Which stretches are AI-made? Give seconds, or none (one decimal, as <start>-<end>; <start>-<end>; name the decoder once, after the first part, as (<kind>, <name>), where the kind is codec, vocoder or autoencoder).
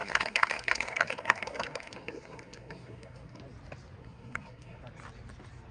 0.0-3.4 (codec, SNAC); 4.0-4.8